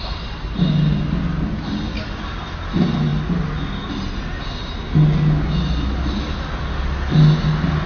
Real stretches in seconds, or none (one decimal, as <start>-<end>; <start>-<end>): 0.0-7.9